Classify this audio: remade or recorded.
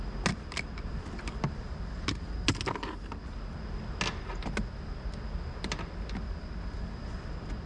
recorded